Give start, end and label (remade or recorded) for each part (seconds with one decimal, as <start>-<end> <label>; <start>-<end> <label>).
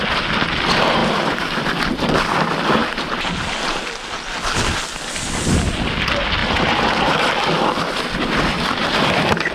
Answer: 0.0-1.0 recorded; 1.0-1.8 remade; 1.8-2.8 recorded; 2.8-3.6 remade; 3.6-6.4 recorded; 6.4-9.1 remade; 9.1-9.5 recorded